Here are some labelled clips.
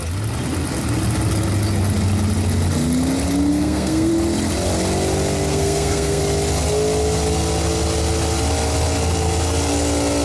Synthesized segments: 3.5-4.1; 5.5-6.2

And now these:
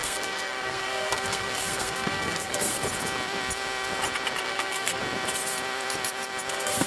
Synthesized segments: 0.0-2.7; 4.4-5.0; 6.5-6.9

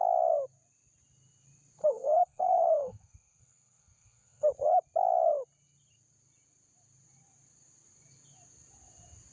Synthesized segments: 1.8-4.5

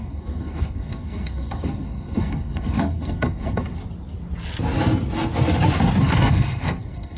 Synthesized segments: 0.0-3.8; 6.0-7.2

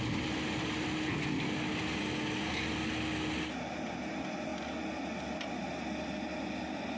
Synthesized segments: none

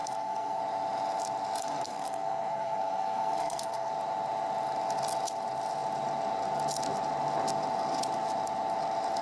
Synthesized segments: 0.0-0.6; 1.6-3.9

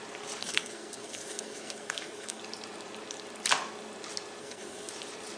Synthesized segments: 0.4-2.4; 4.4-4.9